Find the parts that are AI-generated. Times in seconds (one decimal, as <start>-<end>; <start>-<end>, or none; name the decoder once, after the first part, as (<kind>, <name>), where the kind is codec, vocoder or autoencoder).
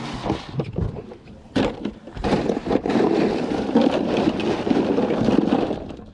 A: 1.1-4.8 (vocoder, BigVGAN v2)